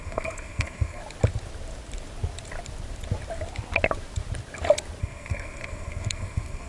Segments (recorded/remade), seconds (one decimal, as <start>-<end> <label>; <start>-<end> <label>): 0.0-1.0 remade; 1.0-5.0 recorded; 5.0-6.7 remade